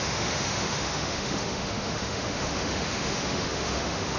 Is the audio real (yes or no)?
no